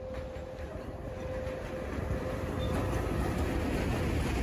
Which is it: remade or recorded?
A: recorded